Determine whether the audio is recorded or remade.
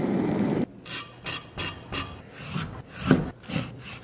recorded